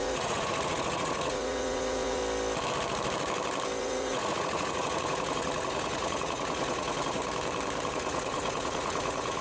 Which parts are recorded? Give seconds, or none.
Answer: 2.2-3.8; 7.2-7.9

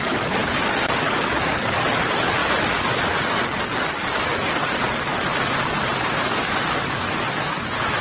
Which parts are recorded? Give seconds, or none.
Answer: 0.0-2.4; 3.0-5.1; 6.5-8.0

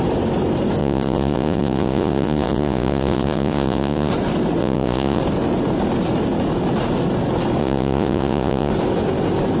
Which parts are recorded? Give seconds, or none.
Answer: 0.0-0.8; 4.1-4.6; 5.2-7.6; 8.7-9.6

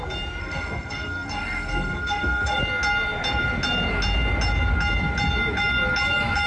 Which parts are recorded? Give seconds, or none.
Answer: 0.0-0.4; 2.6-6.5

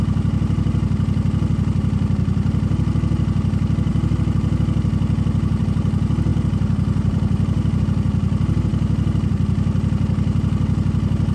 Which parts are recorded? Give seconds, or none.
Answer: 0.0-11.3